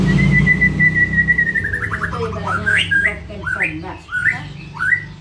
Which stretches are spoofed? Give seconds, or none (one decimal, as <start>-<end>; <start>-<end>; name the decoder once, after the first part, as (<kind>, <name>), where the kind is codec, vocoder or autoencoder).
2.4-3.2 (autoencoder, DAC-VAE)